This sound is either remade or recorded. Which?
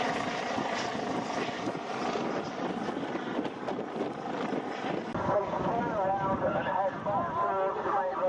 recorded